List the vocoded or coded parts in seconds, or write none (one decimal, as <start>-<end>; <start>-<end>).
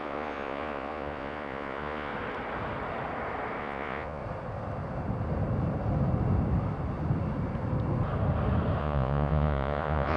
0.0-2.1; 3.6-4.2; 8.8-10.2